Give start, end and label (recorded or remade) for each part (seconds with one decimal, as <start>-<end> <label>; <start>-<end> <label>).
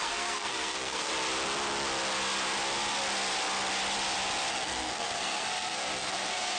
0.0-1.1 remade; 1.1-4.5 recorded; 4.5-6.6 remade